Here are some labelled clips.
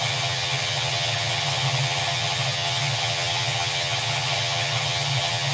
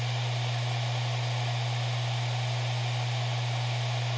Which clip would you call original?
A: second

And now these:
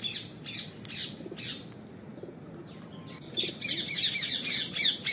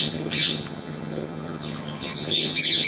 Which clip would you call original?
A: first